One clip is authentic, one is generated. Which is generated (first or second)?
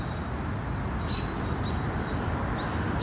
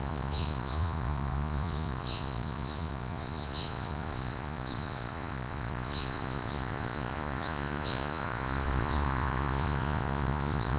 second